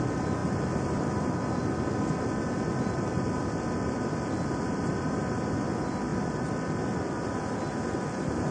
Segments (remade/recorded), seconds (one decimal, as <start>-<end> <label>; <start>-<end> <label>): 0.0-0.4 remade; 0.4-4.7 recorded; 4.7-6.1 remade; 6.1-7.2 recorded; 7.2-8.5 remade